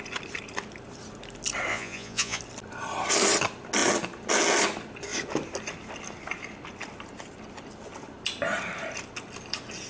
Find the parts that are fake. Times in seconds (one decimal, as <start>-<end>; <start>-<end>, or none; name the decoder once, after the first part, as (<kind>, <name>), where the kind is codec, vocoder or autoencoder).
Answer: 1.7-2.4 (vocoder, Vocos)